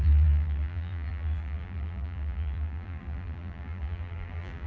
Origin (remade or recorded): remade